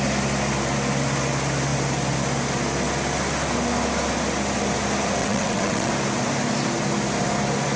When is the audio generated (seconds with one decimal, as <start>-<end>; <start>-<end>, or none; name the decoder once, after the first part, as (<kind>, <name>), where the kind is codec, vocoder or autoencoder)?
5.2-5.9 (vocoder, WaveNeXt)